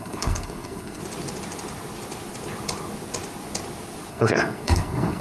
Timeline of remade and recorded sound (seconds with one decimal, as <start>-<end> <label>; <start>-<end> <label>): 0.0-1.0 remade; 1.0-4.1 recorded; 4.1-5.2 remade